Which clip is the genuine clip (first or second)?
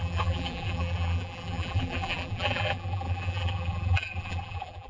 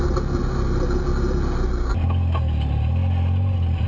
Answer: second